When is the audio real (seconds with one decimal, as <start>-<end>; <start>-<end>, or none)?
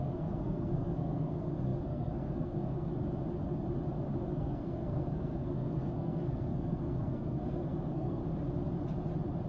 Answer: 2.9-4.3; 8.2-9.5